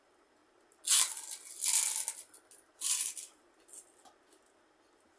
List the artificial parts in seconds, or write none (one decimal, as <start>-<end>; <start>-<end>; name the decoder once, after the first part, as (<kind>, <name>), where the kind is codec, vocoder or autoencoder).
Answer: none